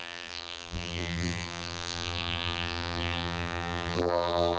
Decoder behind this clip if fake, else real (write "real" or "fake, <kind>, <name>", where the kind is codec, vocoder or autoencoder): fake, vocoder, BigVGAN v2